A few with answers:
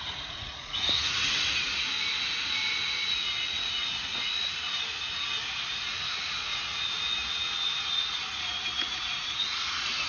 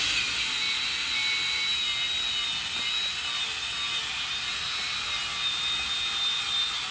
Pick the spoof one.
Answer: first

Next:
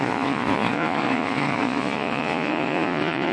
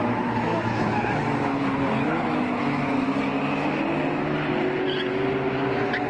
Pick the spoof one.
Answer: first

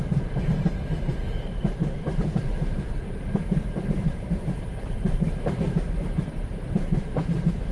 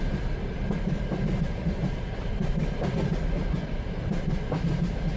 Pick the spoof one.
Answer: first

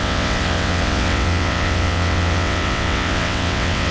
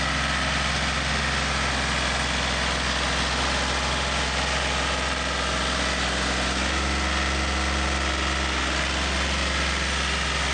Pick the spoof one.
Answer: first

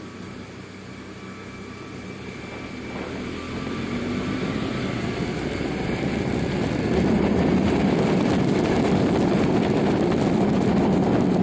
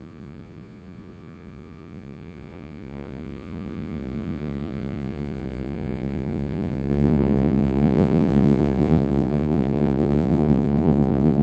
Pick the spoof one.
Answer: second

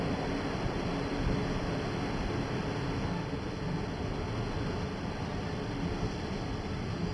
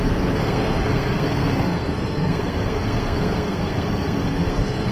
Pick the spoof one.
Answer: second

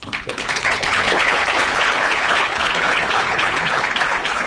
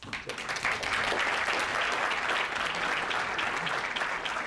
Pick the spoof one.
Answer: first